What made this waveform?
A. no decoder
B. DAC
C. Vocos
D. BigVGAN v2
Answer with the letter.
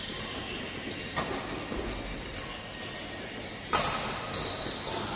A